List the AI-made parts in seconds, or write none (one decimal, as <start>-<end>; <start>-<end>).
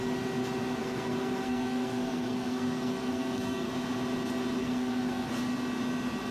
0.8-3.7; 4.6-5.3